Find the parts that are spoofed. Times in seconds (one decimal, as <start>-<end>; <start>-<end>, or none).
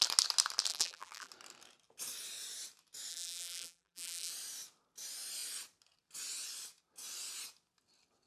0.7-1.3; 3.1-4.3